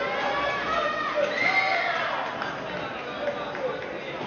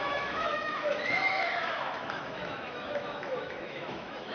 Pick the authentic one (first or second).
first